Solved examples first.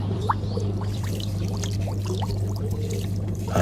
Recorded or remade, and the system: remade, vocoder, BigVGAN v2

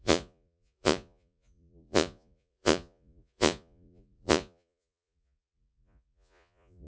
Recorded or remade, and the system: remade, vocoder, Vocos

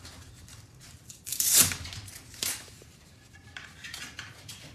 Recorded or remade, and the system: remade, vocoder, BigVGAN v2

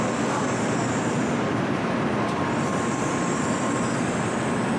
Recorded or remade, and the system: recorded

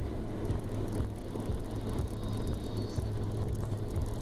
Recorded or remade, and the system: recorded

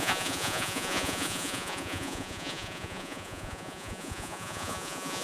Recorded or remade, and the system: remade, vocoder, Vocos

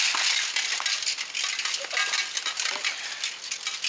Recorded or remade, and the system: recorded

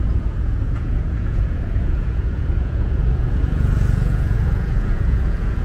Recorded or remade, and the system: remade, vocoder, Vocos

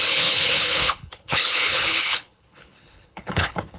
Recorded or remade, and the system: remade, codec, HILCodec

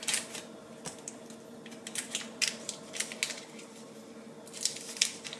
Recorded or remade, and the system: recorded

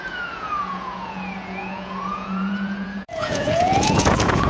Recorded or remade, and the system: remade, vocoder, Vocos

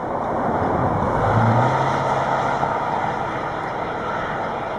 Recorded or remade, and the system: recorded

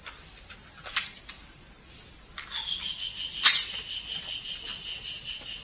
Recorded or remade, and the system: recorded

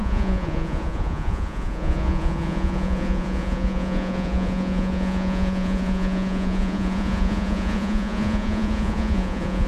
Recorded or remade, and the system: remade, vocoder, Vocos